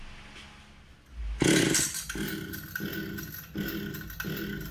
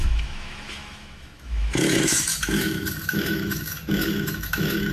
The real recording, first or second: first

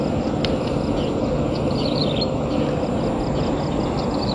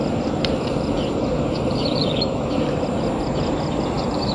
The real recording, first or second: first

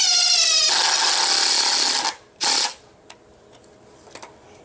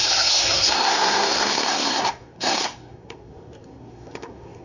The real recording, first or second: first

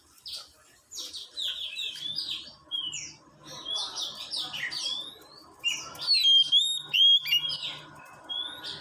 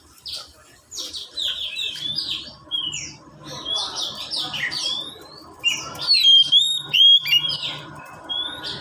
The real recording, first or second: first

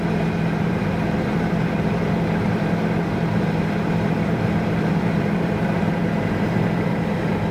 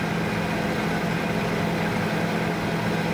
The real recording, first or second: second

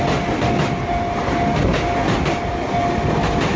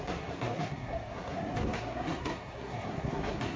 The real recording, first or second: first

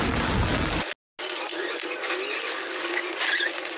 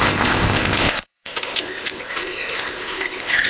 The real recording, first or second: first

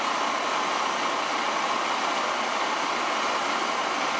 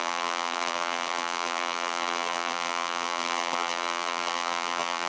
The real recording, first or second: first